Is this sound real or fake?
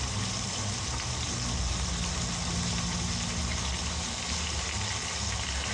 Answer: real